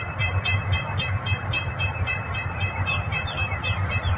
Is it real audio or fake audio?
fake